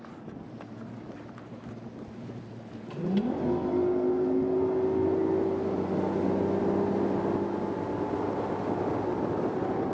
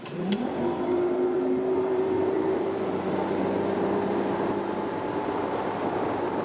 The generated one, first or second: second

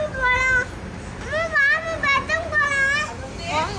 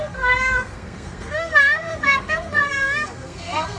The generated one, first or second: second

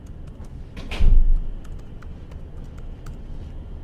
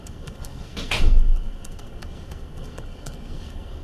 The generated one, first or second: second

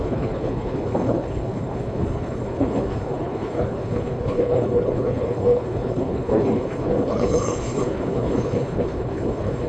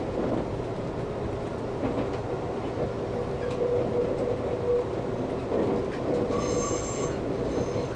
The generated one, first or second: first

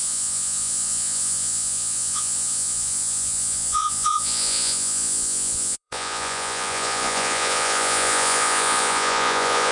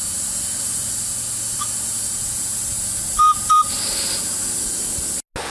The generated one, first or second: first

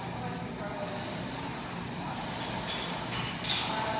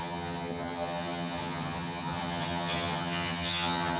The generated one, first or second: second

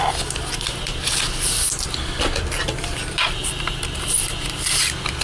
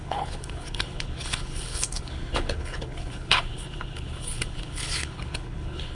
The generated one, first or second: second